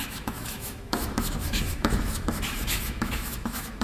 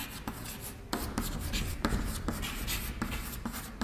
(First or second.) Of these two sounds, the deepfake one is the first